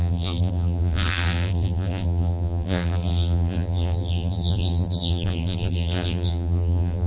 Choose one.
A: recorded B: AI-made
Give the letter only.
B